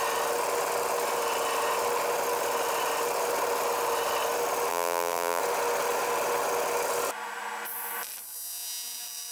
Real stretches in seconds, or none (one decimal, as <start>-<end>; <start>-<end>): 0.0-4.7; 5.4-9.3